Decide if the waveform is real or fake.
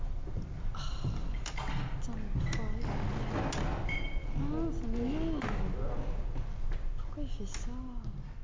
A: real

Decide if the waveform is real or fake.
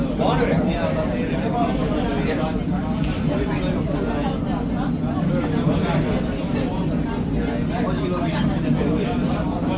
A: real